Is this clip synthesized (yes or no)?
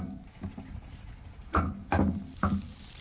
no